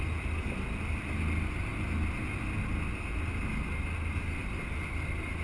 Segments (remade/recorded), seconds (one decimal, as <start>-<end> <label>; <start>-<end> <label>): 0.0-5.4 recorded